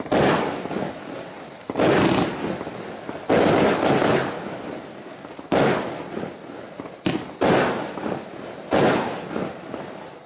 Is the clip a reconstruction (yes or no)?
no